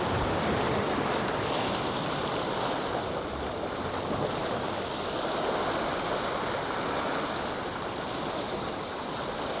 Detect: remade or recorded recorded